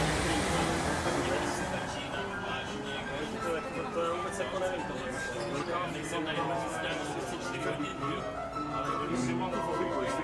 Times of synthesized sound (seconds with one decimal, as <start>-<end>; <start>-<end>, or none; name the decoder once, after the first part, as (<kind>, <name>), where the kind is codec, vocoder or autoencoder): none

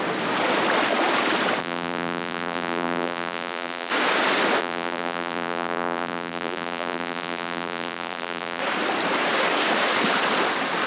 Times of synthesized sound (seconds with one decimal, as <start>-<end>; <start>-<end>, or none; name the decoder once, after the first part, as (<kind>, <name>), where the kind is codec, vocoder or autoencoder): 1.6-3.9 (vocoder, BigVGAN v2); 4.6-8.6

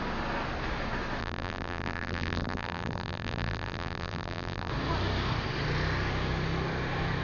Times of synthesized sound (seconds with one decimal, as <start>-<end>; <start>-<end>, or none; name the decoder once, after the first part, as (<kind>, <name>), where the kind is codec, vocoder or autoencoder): 1.2-4.7 (vocoder, BigVGAN v2)

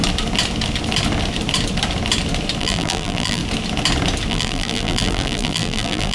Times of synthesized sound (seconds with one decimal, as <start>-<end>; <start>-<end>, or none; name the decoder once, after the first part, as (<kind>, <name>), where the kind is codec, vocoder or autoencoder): 2.6-3.4 (vocoder, BigVGAN v2); 4.3-6.1

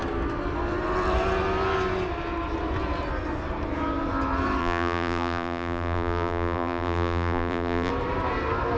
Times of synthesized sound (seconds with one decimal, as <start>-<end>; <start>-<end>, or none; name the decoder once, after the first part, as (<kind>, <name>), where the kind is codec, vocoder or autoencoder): 4.6-7.9 (vocoder, BigVGAN v2)